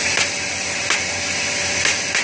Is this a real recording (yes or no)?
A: yes